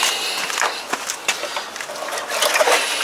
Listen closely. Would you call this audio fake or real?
real